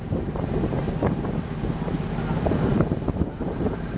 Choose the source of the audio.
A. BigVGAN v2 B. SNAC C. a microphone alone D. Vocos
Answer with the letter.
A